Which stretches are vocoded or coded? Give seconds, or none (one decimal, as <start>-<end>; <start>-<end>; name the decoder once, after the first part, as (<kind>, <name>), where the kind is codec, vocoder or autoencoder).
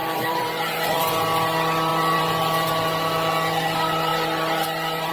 0.0-1.1 (vocoder, BigVGAN v2); 1.9-2.7; 4.1-5.1